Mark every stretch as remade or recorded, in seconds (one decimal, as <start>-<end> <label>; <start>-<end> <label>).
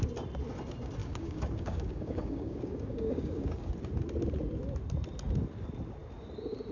0.0-1.0 recorded; 1.0-3.7 remade; 3.7-6.7 recorded